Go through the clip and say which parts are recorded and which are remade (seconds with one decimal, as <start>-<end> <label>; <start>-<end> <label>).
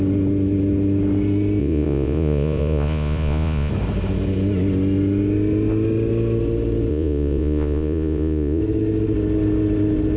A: 0.0-1.6 recorded; 1.6-3.7 remade; 3.7-6.9 recorded; 6.9-8.6 remade; 8.6-10.2 recorded